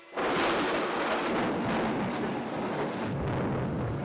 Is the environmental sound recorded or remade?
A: recorded